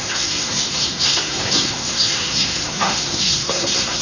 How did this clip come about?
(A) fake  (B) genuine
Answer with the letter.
A